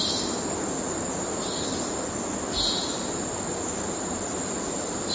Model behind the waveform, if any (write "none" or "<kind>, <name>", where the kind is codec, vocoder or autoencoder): none